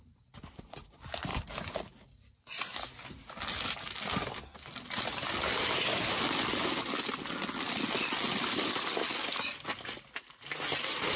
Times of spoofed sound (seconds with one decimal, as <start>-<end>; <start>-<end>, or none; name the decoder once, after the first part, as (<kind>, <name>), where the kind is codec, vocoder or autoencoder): none